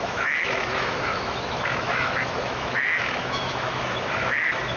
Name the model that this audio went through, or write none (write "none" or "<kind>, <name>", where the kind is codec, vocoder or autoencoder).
autoencoder, DAC-VAE